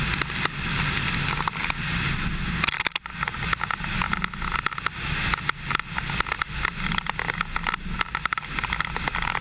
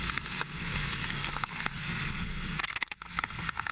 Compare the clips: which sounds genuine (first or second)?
first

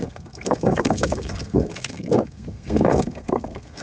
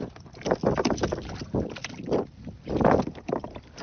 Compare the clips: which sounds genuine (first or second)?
second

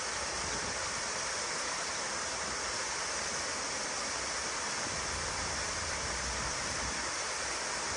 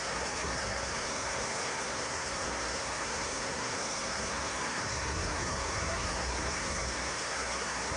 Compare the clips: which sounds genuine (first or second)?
first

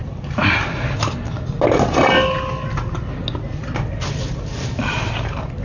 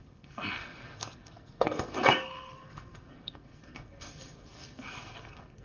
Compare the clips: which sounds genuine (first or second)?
first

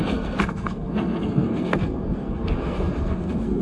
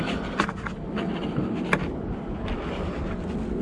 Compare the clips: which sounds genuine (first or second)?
second